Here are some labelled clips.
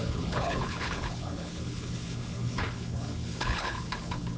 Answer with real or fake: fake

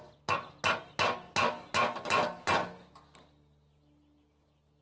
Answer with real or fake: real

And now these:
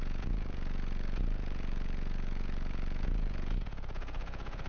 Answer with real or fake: fake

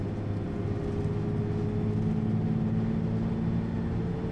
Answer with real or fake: real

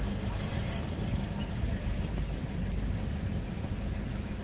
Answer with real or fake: real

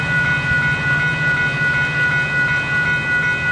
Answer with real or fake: real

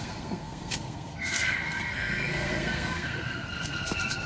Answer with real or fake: fake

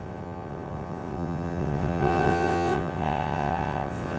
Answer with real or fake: fake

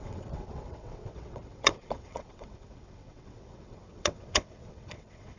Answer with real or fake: fake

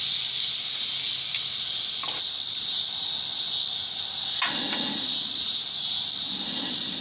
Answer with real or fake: real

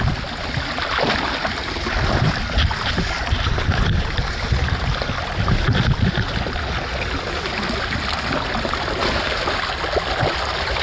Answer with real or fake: real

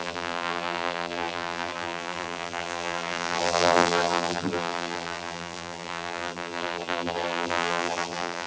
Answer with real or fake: fake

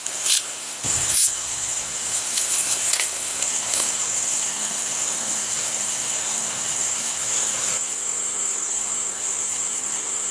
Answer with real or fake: fake